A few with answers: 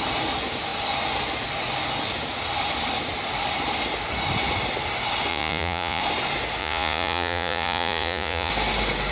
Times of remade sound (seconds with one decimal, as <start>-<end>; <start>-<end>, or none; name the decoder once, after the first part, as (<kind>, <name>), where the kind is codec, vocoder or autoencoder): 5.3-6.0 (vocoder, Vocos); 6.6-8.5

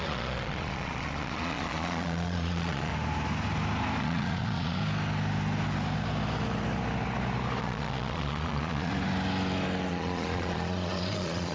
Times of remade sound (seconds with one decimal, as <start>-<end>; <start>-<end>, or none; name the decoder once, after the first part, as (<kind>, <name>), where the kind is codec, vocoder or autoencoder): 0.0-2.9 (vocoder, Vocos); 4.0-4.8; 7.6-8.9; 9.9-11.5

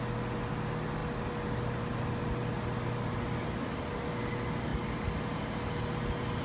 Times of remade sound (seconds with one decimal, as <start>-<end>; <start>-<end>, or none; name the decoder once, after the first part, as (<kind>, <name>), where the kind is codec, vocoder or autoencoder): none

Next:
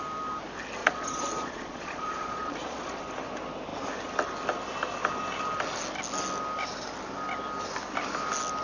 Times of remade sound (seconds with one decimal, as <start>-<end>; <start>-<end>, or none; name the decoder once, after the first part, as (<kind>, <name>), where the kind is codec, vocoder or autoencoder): 0.8-3.0 (vocoder, Vocos)

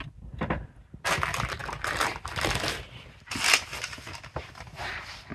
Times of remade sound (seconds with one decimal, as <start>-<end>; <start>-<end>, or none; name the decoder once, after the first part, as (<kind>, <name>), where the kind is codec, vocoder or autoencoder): none

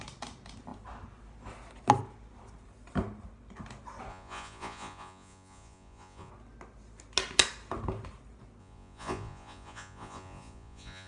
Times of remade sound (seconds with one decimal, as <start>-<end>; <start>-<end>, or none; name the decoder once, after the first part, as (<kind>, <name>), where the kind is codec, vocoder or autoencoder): 4.1-6.3 (vocoder, Vocos); 8.6-11.1

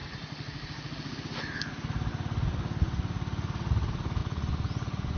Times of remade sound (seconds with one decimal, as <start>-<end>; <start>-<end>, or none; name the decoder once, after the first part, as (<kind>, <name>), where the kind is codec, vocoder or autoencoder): 4.2-5.2 (vocoder, Vocos)

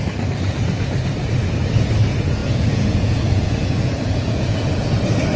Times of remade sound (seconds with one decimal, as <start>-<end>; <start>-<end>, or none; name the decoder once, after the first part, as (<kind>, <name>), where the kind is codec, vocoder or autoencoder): 2.4-4.9 (vocoder, Vocos)